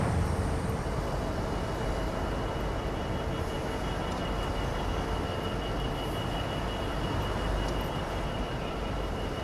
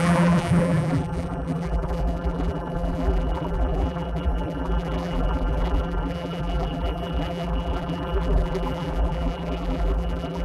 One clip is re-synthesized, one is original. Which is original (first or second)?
first